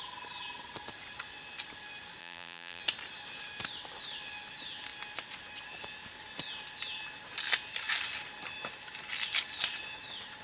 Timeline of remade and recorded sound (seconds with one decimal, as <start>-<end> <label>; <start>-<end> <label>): 0.0-2.2 recorded; 2.2-2.8 remade; 2.8-10.4 recorded